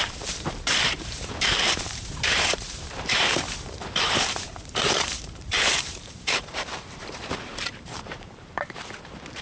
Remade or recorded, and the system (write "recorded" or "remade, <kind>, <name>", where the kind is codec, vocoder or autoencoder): remade, vocoder, BigVGAN v2